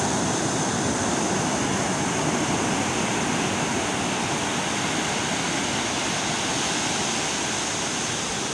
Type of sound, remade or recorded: recorded